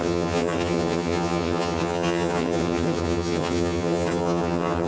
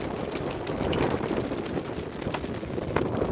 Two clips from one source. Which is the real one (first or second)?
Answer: second